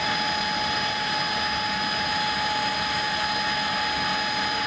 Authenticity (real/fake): real